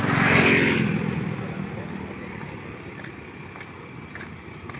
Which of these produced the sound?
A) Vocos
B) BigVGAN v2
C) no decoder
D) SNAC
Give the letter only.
C